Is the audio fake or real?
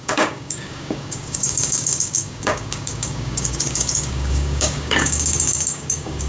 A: fake